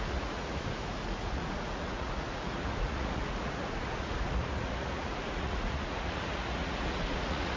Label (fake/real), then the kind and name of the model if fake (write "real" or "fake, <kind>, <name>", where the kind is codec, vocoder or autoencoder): fake, vocoder, Vocos